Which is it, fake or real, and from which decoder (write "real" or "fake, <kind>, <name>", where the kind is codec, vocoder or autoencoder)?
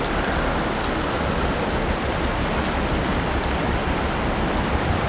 real